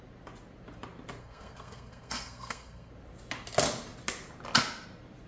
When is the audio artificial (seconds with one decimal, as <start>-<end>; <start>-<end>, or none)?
1.2-2.9